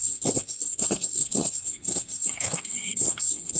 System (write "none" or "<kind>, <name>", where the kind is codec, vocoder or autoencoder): codec, SNAC